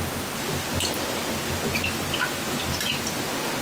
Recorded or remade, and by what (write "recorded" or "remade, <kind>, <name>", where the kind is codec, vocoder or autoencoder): recorded